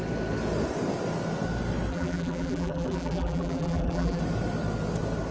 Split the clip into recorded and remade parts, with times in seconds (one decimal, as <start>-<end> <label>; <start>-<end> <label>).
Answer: 0.0-1.9 recorded; 1.9-4.2 remade; 4.2-5.3 recorded